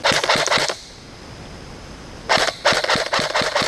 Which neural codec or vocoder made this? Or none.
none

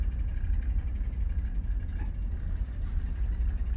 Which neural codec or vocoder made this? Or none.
none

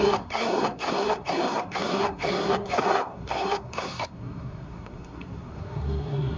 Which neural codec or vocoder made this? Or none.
codec, SNAC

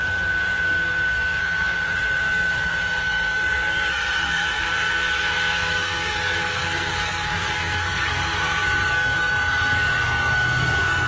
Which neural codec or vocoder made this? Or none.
codec, SNAC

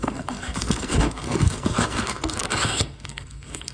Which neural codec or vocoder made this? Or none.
codec, SNAC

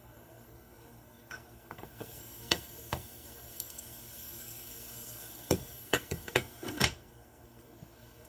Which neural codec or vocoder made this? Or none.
codec, SNAC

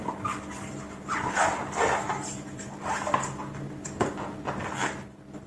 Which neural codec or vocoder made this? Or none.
none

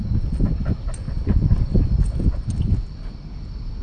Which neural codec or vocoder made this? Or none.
none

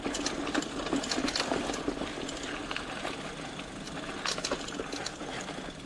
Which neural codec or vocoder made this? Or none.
none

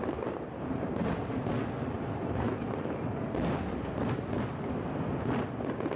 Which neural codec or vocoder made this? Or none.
none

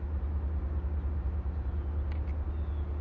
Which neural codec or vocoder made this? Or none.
none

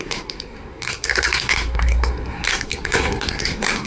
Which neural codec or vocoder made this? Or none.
codec, SNAC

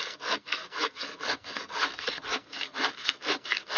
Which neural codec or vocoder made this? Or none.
codec, SNAC